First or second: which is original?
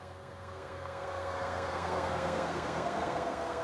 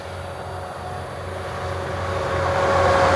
second